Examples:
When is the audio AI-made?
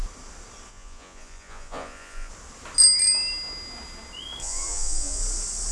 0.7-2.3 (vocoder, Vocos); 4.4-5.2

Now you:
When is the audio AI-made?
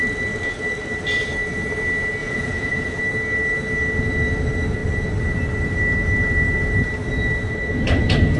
2.2-3.0 (vocoder, Vocos)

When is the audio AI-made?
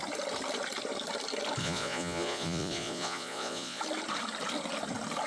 1.6-3.8 (vocoder, Vocos)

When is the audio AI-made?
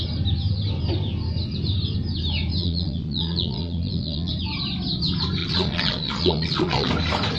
2.6-4.3 (vocoder, Vocos); 5.4-6.9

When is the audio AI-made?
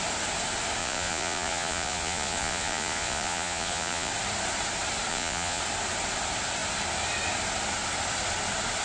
0.8-4.1 (vocoder, Vocos); 5.1-5.6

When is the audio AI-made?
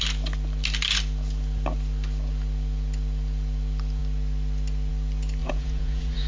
5.4-6.3 (vocoder, Vocos)